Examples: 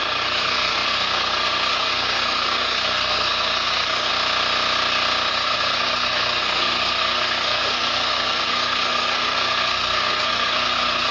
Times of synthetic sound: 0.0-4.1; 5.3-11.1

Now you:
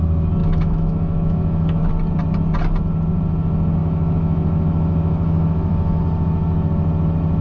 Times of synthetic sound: 0.4-1.9; 3.8-6.0

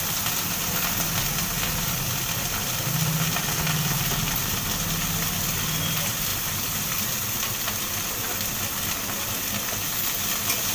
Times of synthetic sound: none

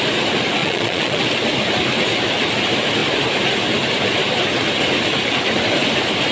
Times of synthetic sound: 0.6-1.2

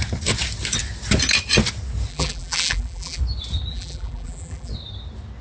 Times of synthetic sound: 2.1-3.2; 3.7-4.7

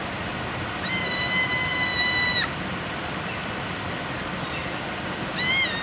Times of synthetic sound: none